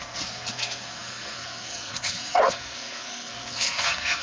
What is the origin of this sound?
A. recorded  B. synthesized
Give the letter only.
B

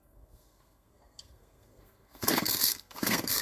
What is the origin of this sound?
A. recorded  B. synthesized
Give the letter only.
B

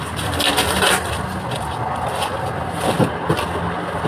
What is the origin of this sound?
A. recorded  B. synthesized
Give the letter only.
A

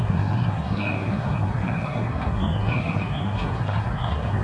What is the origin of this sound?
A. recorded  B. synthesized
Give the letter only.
B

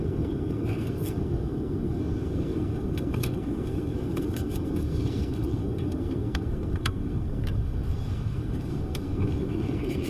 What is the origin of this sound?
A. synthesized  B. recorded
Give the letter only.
A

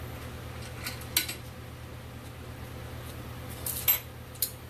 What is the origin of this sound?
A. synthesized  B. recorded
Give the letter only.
B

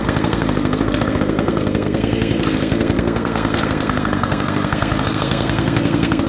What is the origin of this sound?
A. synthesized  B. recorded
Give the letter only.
A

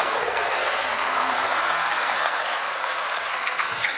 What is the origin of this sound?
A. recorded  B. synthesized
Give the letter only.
B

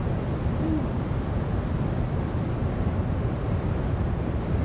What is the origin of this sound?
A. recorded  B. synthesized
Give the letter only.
A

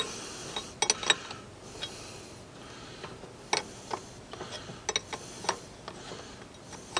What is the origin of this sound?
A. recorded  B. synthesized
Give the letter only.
A